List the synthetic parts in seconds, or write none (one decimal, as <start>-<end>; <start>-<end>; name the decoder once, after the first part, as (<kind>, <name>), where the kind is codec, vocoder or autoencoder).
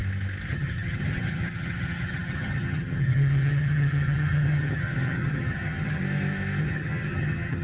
0.5-6.0 (vocoder, HiFi-GAN); 6.6-7.6